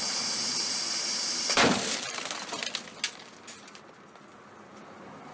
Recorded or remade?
recorded